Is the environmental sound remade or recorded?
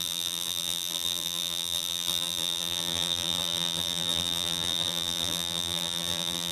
remade